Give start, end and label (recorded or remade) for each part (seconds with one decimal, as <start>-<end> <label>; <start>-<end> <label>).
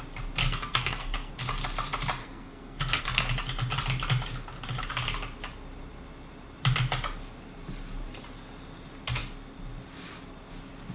0.0-0.4 recorded; 0.4-1.3 remade; 1.3-2.2 recorded; 2.2-3.2 remade; 3.2-10.9 recorded